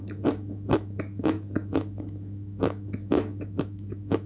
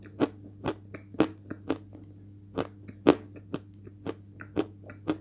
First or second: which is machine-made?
first